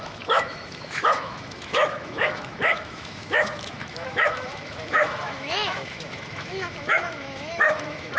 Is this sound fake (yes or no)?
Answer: yes